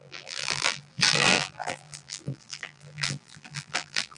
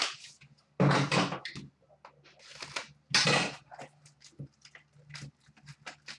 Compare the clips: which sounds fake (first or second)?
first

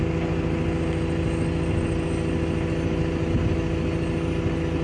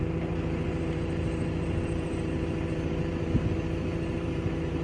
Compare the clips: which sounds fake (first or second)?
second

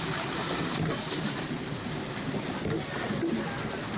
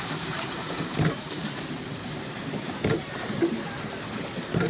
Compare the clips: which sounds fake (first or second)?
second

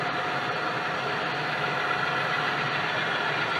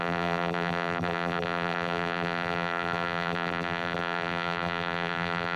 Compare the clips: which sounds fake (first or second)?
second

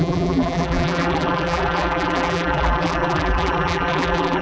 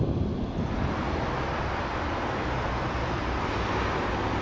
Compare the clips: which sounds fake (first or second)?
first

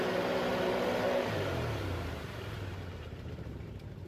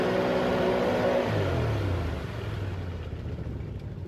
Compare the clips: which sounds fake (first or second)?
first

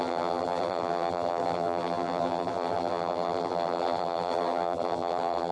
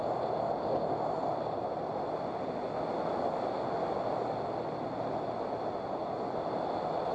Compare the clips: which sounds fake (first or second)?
first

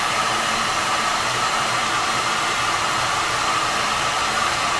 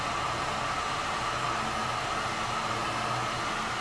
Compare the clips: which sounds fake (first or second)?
first